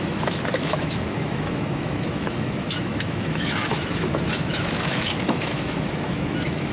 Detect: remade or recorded remade